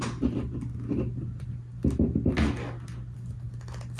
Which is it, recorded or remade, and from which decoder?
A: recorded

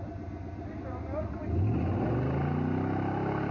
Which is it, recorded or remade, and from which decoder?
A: recorded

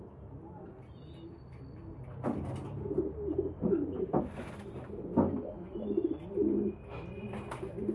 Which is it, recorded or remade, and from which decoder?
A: recorded